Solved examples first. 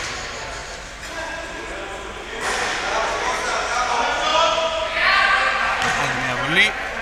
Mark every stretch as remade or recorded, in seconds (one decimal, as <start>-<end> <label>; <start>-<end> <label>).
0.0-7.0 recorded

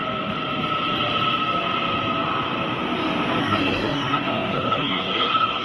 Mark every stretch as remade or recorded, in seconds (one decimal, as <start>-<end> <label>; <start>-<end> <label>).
0.0-3.4 recorded; 3.4-5.6 remade

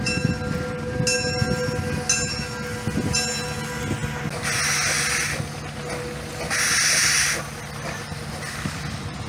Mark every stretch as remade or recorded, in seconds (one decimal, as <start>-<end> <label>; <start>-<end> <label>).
0.0-9.3 recorded

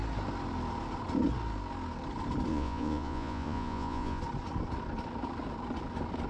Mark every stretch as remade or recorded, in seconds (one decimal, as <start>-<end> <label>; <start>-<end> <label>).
0.0-2.5 recorded; 2.5-4.2 remade; 4.2-6.3 recorded

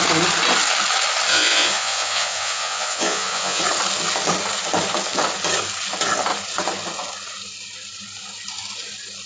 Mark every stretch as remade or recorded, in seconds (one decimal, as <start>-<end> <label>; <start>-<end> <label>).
0.0-1.3 recorded; 1.3-3.6 remade; 3.6-9.3 recorded

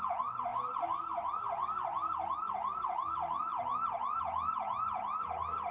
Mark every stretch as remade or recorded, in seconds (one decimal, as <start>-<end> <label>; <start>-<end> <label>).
0.0-3.5 recorded; 3.5-4.2 remade; 4.2-5.7 recorded

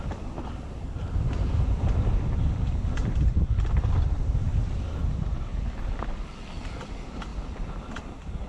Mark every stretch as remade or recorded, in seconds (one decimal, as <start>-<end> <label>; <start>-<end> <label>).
0.0-5.5 remade; 5.5-6.6 recorded; 6.6-7.3 remade; 7.3-8.0 recorded; 8.0-8.5 remade